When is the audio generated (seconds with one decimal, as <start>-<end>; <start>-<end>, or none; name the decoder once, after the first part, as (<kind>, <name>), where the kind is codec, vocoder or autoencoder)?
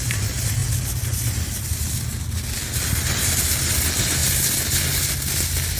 none